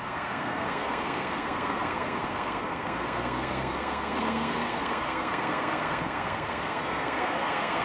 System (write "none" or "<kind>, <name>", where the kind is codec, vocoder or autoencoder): codec, SNAC